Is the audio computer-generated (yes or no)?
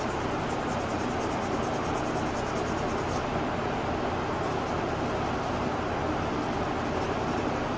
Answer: no